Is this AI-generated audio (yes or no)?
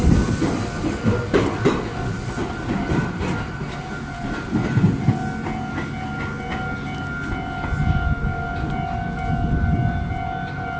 no